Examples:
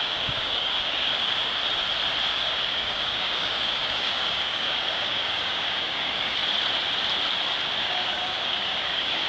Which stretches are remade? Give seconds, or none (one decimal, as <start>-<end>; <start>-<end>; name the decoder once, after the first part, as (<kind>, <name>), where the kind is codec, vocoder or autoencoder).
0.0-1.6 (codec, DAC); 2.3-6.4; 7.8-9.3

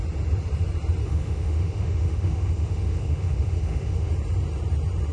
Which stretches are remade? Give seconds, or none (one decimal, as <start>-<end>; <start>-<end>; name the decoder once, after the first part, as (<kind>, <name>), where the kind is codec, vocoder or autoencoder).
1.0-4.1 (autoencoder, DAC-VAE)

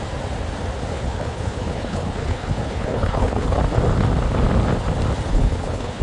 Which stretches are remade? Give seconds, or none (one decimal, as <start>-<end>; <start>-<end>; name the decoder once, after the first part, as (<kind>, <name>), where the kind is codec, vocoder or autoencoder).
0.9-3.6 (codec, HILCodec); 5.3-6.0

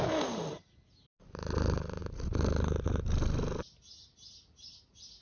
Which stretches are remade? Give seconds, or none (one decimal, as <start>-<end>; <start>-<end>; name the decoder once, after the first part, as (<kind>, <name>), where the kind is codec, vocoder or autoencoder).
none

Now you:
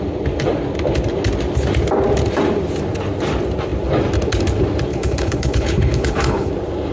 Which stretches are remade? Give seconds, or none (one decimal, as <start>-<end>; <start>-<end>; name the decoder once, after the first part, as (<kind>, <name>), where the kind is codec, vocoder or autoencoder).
4.9-6.5 (codec, HILCodec)